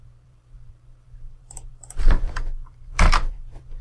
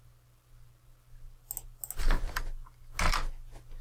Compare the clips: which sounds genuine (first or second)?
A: second